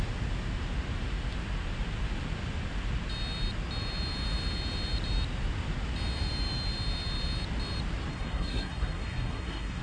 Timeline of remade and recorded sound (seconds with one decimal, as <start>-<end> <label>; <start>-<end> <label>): 0.0-8.1 recorded; 8.1-9.8 remade